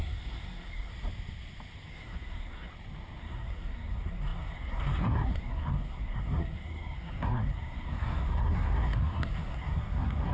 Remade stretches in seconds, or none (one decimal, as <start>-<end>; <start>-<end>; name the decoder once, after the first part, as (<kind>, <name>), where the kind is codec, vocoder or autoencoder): 0.0-0.9 (codec, SNAC); 1.9-2.7; 3.2-10.3